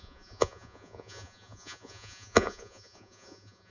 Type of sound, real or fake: fake